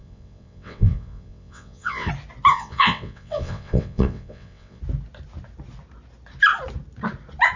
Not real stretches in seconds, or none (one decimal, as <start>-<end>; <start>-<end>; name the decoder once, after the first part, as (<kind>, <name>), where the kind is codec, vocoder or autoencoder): 0.0-2.1 (vocoder, WaveNeXt); 2.5-4.8